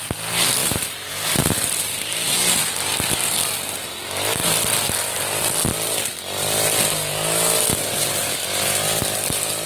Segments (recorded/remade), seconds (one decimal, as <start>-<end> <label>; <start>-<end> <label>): 0.0-0.6 recorded; 0.6-1.9 remade; 1.9-7.7 recorded; 7.7-8.3 remade; 8.3-9.7 recorded